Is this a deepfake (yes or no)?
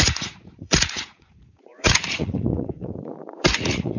yes